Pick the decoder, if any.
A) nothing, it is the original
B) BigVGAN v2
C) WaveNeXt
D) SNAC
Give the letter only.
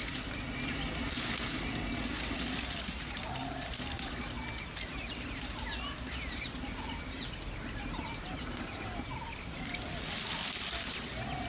A